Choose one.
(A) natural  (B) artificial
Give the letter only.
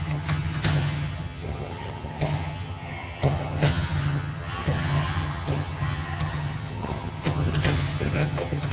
B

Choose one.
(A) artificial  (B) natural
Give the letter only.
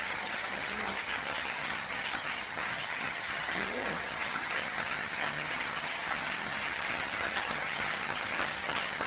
A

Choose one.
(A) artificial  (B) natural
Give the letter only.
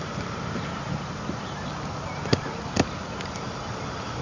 B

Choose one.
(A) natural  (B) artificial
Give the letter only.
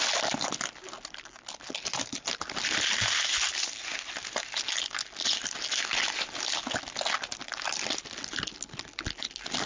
A